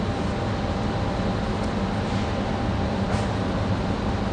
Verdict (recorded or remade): recorded